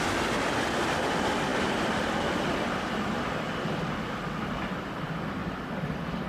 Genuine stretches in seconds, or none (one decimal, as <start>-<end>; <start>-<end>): 0.0-6.3